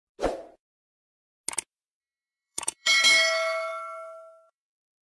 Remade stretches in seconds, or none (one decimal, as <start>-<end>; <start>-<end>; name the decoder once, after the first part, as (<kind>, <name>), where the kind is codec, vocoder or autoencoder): 2.0-5.2 (autoencoder, DAC-VAE)